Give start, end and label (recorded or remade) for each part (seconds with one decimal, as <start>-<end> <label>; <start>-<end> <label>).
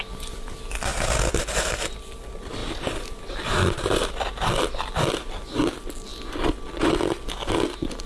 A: 0.0-2.6 recorded; 2.6-5.0 remade; 5.0-8.1 recorded